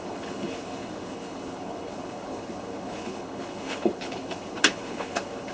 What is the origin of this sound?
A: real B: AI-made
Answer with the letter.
B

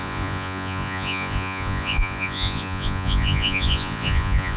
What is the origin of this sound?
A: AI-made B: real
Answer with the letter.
A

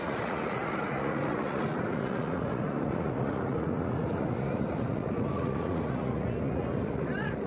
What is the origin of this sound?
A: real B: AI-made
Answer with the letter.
B